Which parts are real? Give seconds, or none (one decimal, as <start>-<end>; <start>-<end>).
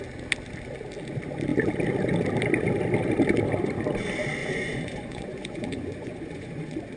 0.0-4.4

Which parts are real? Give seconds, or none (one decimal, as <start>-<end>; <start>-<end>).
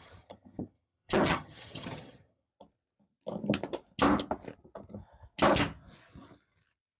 2.5-7.0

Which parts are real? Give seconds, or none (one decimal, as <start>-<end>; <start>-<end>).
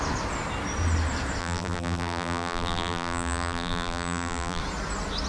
0.0-1.4; 4.6-5.3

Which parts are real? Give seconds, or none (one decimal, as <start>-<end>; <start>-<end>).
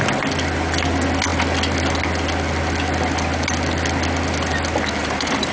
0.0-5.0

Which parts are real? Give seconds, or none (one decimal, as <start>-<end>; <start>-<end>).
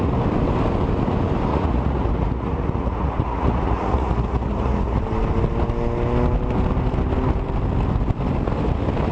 0.0-1.5; 5.0-9.1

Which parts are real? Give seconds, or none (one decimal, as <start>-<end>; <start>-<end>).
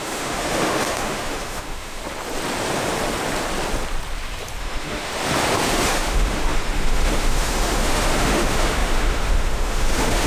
2.0-4.6; 5.1-5.7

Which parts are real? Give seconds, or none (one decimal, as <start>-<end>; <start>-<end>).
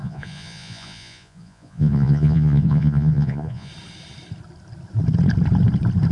3.7-6.1